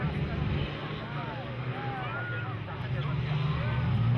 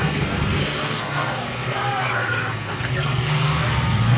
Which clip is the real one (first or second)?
first